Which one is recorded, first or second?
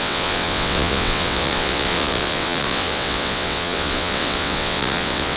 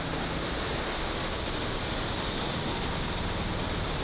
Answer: second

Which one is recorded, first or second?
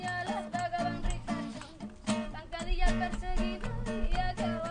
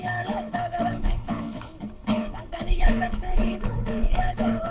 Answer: first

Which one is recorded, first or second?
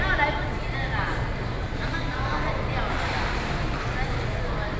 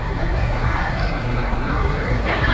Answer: first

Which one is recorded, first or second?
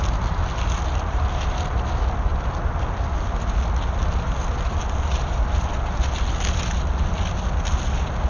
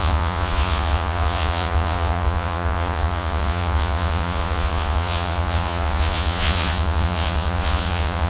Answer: first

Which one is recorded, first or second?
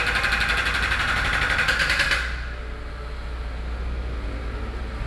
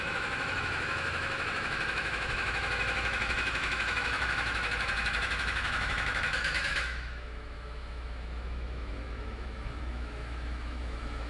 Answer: first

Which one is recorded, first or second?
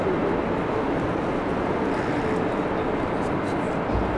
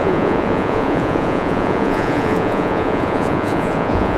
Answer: first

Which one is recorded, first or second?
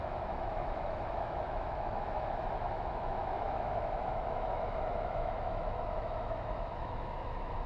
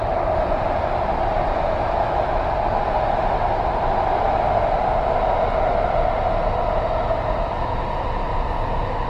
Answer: second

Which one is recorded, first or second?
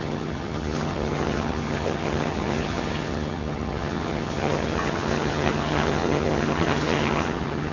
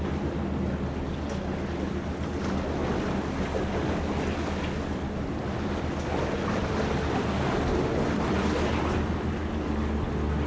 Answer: second